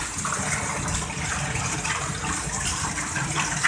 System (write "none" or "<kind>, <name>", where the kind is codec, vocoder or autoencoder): none